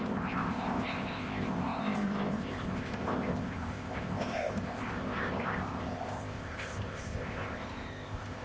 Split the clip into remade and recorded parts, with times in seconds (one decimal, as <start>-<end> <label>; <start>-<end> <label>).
0.0-8.4 remade